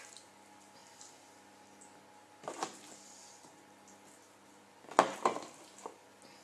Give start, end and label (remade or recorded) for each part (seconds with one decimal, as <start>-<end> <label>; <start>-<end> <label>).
0.0-6.4 recorded